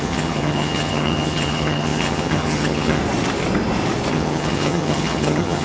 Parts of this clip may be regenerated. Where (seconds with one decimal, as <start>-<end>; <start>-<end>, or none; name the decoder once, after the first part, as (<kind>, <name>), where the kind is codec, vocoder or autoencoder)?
0.0-3.0 (vocoder, HiFi-GAN); 4.1-5.6